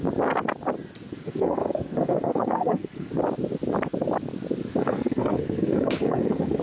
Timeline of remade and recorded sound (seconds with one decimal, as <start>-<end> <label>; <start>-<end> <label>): 0.0-1.1 recorded; 1.1-3.1 remade; 3.1-4.8 recorded; 4.8-6.6 remade